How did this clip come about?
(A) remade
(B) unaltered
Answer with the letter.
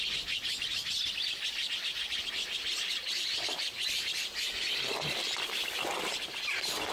B